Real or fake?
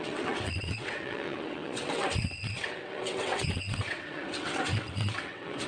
fake